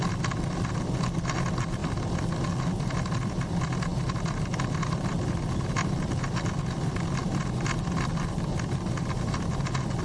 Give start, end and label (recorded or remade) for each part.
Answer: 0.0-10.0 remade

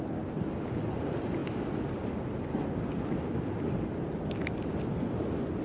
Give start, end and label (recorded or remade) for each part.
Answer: 0.0-5.6 recorded

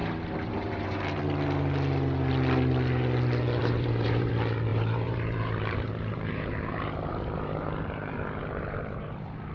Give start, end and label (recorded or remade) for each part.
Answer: 0.0-1.2 remade; 1.2-3.6 recorded; 3.6-4.3 remade; 4.3-4.7 recorded; 4.7-9.5 remade

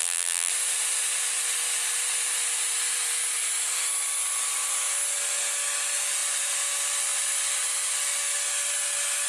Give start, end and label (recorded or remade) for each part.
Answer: 0.0-0.5 remade; 0.5-9.3 recorded